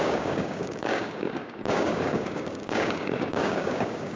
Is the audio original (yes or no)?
no